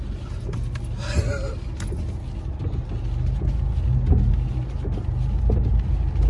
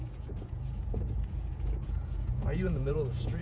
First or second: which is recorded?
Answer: first